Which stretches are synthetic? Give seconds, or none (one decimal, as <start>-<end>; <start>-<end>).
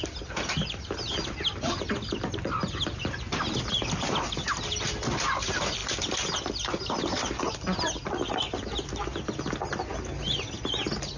none